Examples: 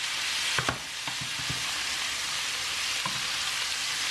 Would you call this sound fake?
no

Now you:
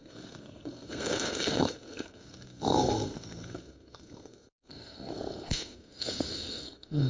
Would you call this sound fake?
yes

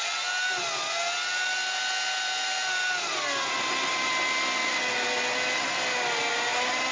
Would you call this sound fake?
no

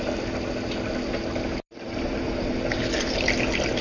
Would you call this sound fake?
no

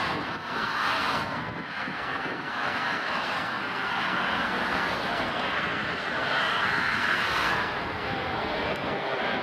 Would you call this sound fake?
yes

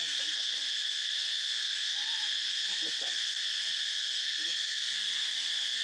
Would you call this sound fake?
yes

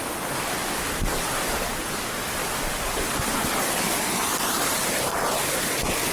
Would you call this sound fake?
no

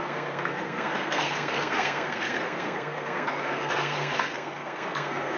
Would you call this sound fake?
yes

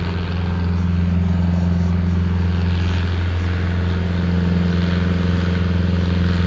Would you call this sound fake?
no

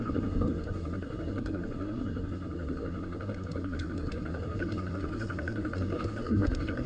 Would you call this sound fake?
yes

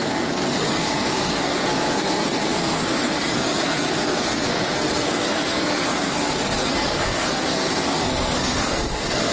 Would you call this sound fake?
yes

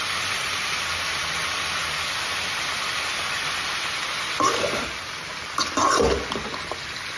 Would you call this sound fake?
no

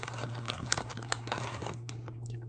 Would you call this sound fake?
yes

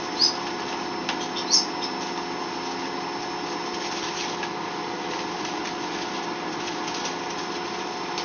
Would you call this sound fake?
no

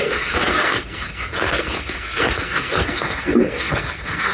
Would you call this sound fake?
yes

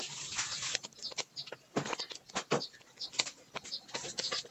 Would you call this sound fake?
no